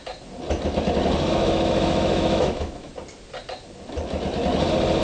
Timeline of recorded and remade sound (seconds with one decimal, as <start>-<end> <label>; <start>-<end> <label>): 0.0-1.3 recorded; 1.3-2.9 remade; 2.9-5.0 recorded